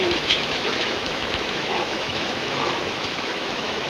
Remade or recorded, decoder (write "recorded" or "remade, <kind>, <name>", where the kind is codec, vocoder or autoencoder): remade, autoencoder, DAC-VAE